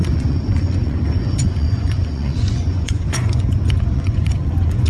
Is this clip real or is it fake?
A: fake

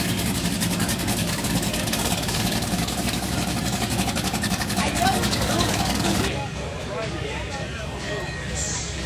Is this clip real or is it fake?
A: fake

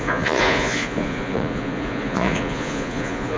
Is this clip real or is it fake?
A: fake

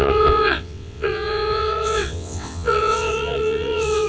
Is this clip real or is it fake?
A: fake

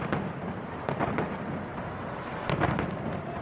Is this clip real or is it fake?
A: real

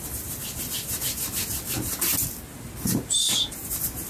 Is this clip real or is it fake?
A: real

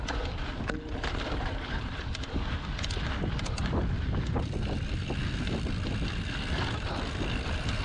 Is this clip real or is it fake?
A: fake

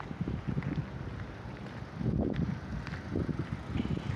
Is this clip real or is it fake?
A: real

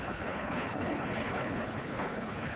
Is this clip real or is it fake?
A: fake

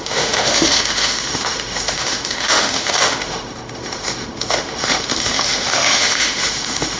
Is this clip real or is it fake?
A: fake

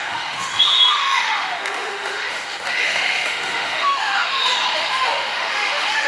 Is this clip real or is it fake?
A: fake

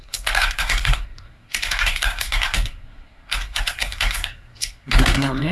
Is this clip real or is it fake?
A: fake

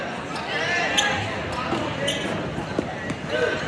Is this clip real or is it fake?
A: real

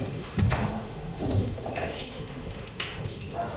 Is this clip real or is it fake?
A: fake